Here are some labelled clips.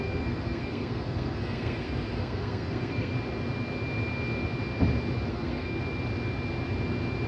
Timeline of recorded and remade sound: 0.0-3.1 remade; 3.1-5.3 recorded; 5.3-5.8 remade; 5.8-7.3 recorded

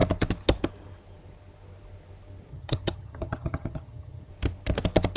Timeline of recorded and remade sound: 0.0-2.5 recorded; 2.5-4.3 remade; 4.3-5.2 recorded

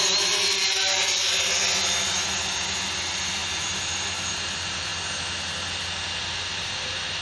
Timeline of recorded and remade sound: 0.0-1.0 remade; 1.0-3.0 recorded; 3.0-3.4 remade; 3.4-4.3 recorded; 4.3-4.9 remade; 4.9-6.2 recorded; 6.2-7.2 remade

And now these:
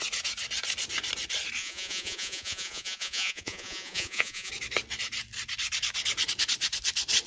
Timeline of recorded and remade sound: 0.0-1.6 recorded; 1.6-4.5 remade; 4.5-7.3 recorded

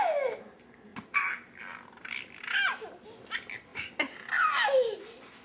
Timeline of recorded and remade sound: 0.0-5.4 recorded

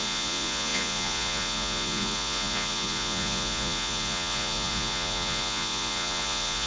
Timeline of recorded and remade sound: 0.0-6.7 remade